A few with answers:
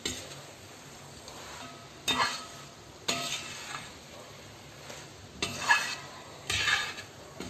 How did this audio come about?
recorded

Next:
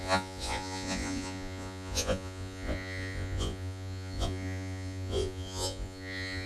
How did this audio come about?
remade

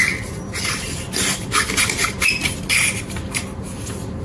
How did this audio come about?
recorded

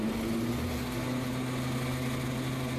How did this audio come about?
recorded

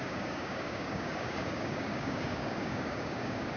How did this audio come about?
remade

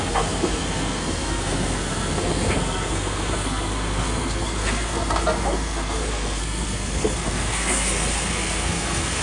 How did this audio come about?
remade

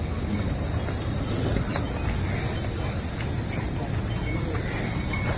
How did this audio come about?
recorded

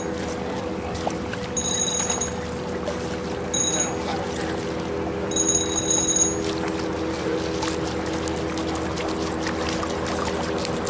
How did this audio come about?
recorded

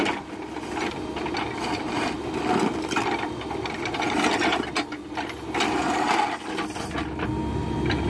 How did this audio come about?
recorded